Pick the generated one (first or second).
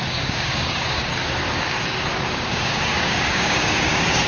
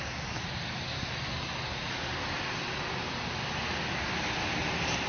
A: first